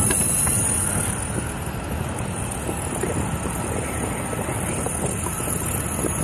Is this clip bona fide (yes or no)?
yes